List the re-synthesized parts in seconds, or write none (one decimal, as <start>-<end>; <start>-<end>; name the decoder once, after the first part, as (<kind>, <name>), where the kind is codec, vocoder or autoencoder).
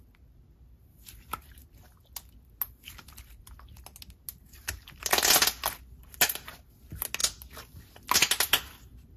none